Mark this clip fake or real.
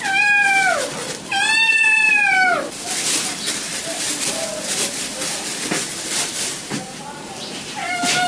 fake